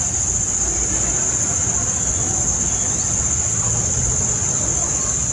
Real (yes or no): yes